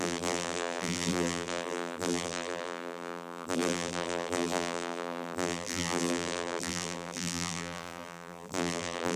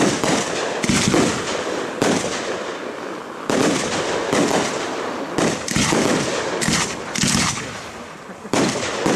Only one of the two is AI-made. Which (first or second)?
first